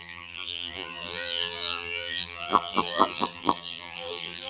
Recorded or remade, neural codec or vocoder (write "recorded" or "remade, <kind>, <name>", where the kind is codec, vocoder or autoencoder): remade, vocoder, BigVGAN v2